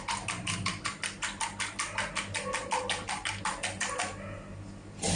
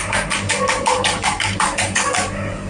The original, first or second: first